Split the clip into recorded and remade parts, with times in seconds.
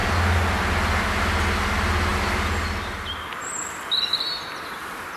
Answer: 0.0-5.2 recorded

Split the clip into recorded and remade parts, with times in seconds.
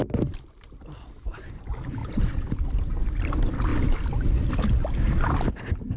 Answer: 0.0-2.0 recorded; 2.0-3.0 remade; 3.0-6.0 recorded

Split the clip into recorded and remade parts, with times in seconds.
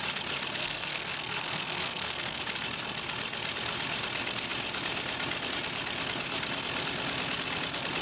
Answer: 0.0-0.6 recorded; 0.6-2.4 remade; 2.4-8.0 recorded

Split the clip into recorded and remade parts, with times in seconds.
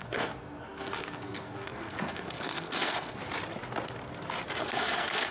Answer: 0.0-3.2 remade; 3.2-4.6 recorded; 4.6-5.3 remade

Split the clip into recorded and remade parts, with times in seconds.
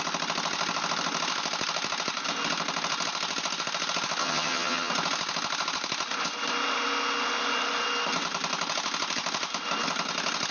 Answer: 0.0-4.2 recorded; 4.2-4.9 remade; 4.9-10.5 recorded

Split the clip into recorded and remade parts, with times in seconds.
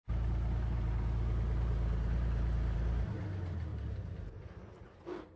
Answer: 0.0-3.2 remade; 3.2-3.7 recorded; 3.7-5.4 remade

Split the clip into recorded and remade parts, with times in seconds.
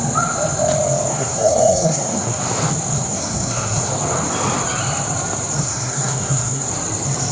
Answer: 0.0-1.1 recorded; 1.1-2.4 remade; 2.4-2.9 recorded; 2.9-3.9 remade; 3.9-5.6 recorded; 5.6-6.7 remade; 6.7-7.3 recorded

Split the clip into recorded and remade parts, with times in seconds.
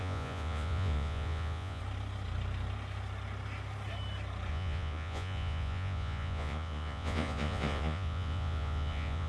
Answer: 0.0-1.8 remade; 1.8-4.5 recorded; 4.5-9.3 remade